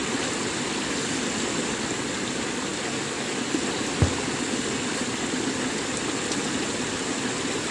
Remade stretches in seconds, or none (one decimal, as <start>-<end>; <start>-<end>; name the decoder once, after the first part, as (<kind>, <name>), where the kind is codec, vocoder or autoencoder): none